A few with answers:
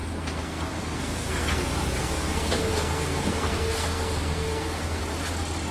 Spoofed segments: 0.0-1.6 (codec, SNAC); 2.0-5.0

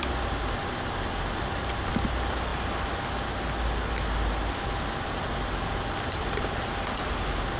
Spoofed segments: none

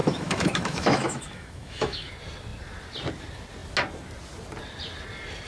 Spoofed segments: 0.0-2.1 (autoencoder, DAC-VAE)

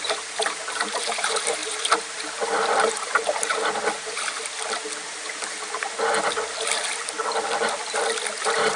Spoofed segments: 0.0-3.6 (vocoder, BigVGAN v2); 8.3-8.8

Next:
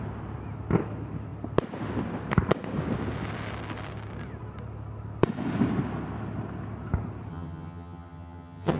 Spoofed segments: 7.3-8.8 (vocoder, HiFi-GAN)

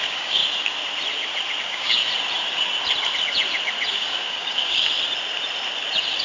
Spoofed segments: 0.0-0.4 (codec, DAC); 1.6-2.0; 3.9-4.9